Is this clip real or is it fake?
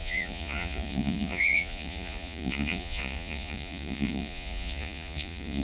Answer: fake